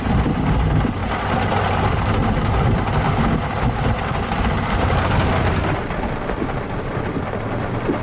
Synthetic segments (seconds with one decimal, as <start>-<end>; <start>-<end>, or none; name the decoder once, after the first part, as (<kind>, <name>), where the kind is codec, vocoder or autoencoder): none